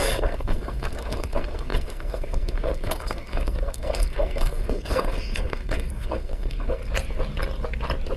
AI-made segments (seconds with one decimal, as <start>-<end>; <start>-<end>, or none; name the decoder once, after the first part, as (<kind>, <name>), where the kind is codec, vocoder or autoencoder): 0.0-6.8 (codec, SNAC)

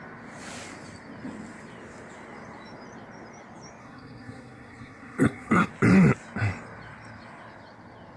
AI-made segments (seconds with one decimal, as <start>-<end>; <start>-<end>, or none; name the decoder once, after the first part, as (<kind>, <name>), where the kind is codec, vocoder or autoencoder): 3.8-5.7 (codec, SNAC)

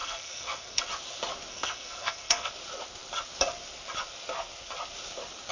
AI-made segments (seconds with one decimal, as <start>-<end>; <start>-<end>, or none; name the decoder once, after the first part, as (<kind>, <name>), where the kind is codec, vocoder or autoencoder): 0.0-0.8 (codec, SNAC); 1.5-2.5

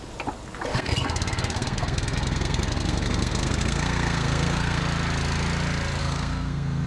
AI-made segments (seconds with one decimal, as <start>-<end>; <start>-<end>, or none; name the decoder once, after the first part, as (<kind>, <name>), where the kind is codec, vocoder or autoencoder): 0.7-4.8 (codec, SNAC); 6.0-6.9

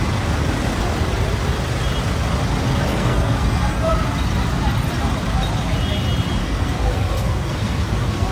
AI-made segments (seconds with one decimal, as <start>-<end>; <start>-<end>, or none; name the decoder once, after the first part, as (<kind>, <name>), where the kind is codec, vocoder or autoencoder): 2.9-3.9 (codec, SNAC); 6.4-8.3

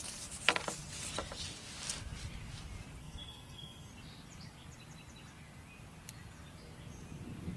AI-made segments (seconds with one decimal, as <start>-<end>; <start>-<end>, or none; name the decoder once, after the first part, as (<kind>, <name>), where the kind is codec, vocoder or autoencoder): 3.0-3.9 (codec, SNAC)

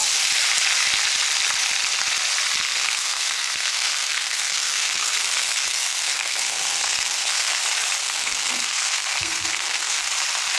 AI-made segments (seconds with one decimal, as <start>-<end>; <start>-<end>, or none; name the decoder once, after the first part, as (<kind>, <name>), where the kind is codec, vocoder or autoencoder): 2.6-7.6 (codec, SNAC); 8.0-10.0

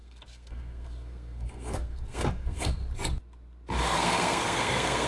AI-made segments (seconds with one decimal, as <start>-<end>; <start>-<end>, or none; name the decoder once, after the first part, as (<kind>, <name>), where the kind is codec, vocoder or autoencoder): 0.0-2.8 (codec, SNAC); 3.8-5.1